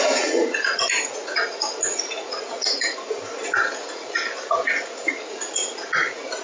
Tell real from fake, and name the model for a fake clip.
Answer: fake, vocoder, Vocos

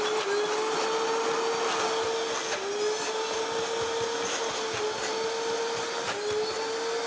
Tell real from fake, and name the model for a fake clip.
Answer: real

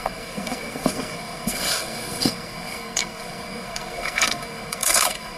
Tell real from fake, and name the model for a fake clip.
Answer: fake, codec, SNAC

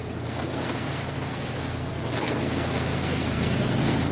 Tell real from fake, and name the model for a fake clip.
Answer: fake, codec, SNAC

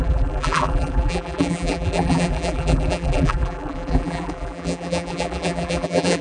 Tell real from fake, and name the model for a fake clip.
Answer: fake, vocoder, BigVGAN v2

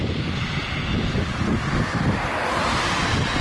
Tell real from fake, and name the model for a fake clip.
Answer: real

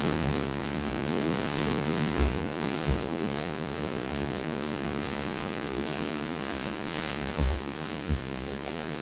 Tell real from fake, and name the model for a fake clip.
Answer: fake, vocoder, Vocos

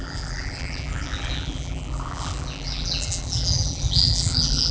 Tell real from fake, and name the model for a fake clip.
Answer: fake, vocoder, BigVGAN v2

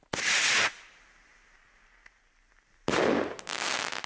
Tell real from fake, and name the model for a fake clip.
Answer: real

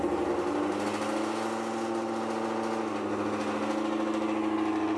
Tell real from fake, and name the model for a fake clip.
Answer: real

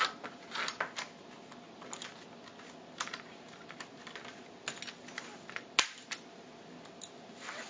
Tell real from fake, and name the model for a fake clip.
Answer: real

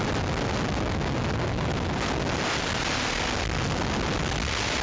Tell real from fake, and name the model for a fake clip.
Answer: real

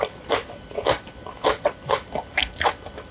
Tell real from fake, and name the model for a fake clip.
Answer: real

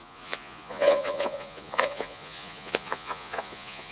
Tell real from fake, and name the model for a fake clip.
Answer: fake, vocoder, Vocos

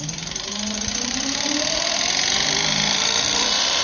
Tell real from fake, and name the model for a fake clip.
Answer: fake, vocoder, BigVGAN v2